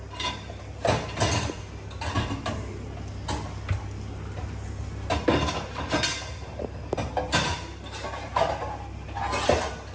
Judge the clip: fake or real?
real